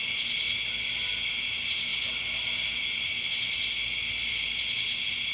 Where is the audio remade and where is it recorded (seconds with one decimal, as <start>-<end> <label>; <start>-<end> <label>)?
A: 0.0-5.3 recorded